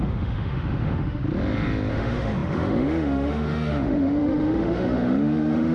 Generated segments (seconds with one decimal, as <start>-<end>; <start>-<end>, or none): 0.0-1.2; 1.9-5.7